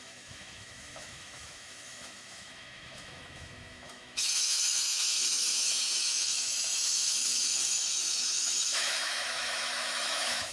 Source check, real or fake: fake